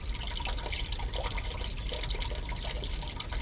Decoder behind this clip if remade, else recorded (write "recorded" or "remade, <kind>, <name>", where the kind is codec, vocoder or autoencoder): recorded